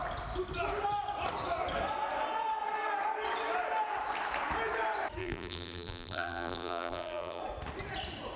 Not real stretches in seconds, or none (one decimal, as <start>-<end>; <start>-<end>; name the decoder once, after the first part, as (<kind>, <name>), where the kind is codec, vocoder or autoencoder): 5.2-7.4 (vocoder, BigVGAN v2)